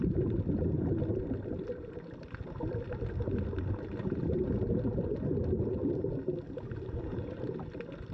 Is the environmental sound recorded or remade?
recorded